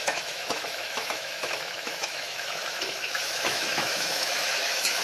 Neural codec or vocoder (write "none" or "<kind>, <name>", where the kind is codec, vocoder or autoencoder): autoencoder, DAC-VAE